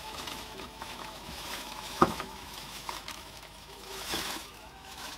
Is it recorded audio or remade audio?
remade